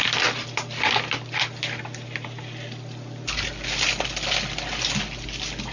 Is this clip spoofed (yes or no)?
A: no